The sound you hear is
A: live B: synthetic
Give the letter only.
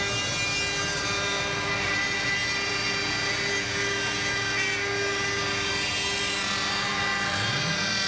A